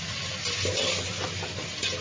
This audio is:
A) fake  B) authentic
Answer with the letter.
B